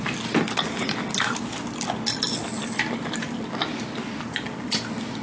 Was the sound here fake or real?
real